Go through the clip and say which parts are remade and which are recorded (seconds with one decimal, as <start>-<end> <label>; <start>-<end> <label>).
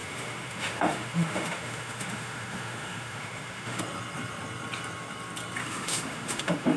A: 0.0-3.8 remade; 3.8-5.6 recorded; 5.6-6.8 remade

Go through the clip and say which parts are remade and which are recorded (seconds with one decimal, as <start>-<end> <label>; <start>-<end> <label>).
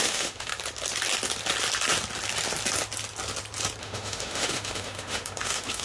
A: 0.0-0.5 remade; 0.5-3.8 recorded; 3.8-5.8 remade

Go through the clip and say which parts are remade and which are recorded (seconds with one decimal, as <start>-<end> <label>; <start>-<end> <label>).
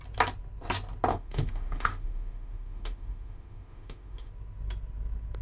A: 0.0-1.1 recorded; 1.1-4.3 remade; 4.3-5.4 recorded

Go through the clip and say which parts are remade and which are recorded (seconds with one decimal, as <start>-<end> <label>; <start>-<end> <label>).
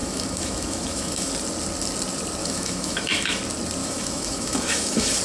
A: 0.0-1.3 remade; 1.3-2.4 recorded; 2.4-3.4 remade; 3.4-3.8 recorded; 3.8-5.2 remade